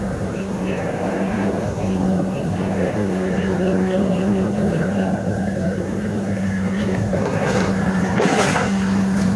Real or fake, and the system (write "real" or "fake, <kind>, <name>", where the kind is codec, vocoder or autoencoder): fake, codec, SNAC